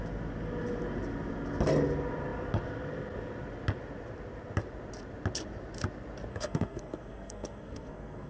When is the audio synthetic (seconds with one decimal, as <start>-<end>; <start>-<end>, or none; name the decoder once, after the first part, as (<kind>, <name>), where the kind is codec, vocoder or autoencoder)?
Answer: 6.3-8.3 (codec, SNAC)